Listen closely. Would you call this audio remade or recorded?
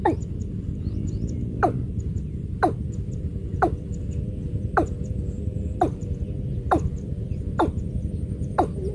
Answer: recorded